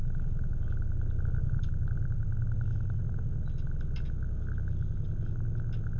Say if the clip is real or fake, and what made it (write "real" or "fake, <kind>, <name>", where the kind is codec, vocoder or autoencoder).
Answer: real